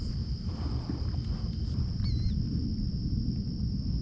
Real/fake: real